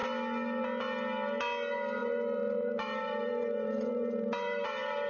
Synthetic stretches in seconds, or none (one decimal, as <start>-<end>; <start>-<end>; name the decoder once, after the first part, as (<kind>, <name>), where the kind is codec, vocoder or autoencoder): 2.0-5.1 (vocoder, BigVGAN v2)